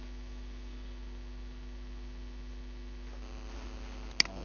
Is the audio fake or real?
real